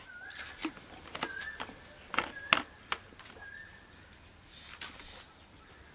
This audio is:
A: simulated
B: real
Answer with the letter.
B